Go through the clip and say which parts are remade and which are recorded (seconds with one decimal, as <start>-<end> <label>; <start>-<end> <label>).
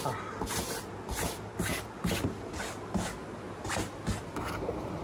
0.0-5.0 recorded